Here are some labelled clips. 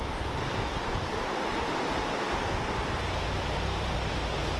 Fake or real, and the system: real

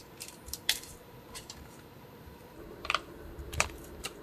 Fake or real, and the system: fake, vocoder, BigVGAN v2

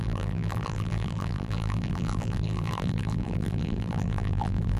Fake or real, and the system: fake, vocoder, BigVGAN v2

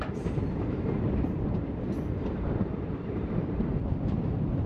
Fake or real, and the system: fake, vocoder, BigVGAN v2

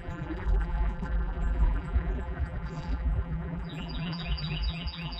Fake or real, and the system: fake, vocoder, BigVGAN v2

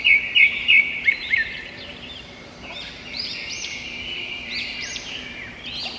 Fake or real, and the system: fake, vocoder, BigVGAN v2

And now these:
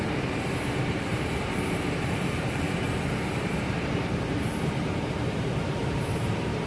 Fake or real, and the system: fake, vocoder, BigVGAN v2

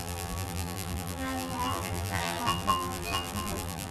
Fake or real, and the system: fake, vocoder, BigVGAN v2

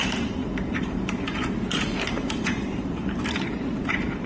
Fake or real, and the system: fake, vocoder, BigVGAN v2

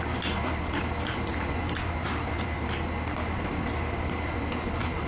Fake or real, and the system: fake, vocoder, BigVGAN v2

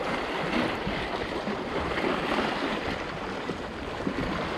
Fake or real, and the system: fake, vocoder, BigVGAN v2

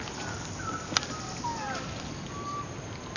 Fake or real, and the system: real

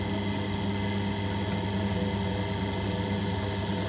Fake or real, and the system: real